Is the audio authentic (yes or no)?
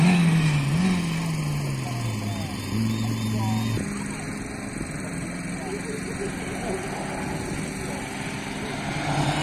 yes